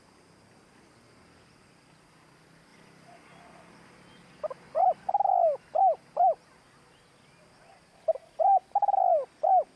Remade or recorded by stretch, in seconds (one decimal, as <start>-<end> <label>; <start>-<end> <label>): 0.0-9.8 recorded